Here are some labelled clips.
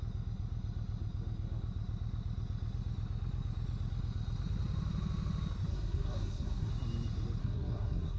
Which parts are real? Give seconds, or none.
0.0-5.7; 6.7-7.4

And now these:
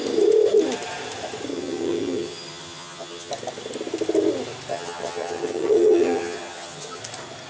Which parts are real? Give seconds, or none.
0.0-1.5; 3.3-4.7; 7.0-7.5

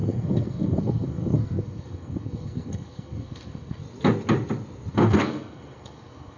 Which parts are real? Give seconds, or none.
3.8-4.9

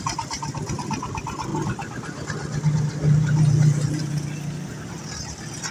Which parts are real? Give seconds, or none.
0.0-5.7

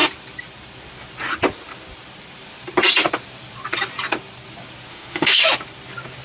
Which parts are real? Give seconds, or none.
0.0-4.9; 5.4-6.2

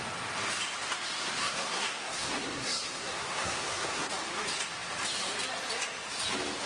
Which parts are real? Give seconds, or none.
0.0-1.4; 4.1-6.7